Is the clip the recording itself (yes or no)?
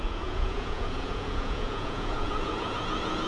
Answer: no